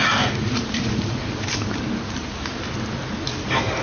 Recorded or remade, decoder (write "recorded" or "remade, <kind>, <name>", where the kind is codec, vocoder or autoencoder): recorded